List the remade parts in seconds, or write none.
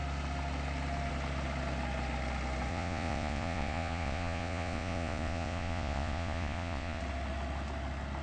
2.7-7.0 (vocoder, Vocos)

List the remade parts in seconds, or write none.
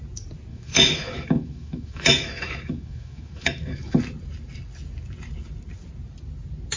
0.5-4.0 (autoencoder, DAC-VAE)